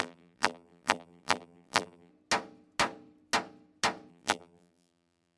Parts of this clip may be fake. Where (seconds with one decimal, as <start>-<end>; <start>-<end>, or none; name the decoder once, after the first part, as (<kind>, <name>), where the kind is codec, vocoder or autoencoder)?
0.0-2.1 (vocoder, BigVGAN v2); 4.1-5.4